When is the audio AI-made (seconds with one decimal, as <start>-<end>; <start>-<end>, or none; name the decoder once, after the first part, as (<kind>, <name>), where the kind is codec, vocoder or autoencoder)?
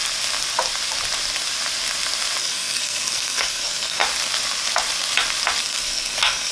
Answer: 2.4-4.0 (codec, SNAC); 5.6-6.5